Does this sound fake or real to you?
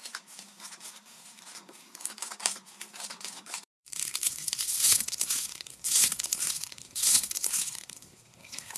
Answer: fake